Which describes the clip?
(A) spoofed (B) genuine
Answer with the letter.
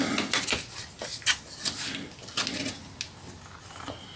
B